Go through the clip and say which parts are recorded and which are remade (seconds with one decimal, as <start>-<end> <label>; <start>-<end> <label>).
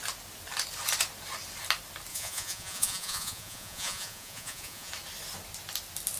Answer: 0.0-2.1 recorded; 2.1-4.9 remade; 4.9-6.2 recorded